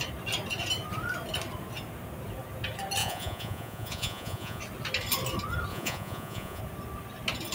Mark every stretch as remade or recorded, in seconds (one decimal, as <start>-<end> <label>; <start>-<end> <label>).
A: 0.0-3.0 recorded; 3.0-4.6 remade; 4.6-5.7 recorded; 5.7-6.6 remade; 6.6-7.5 recorded